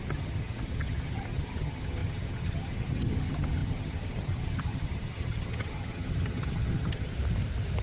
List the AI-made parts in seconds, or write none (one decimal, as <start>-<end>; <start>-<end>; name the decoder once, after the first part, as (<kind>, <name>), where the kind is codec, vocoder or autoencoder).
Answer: 0.0-7.1 (vocoder, HiFi-GAN)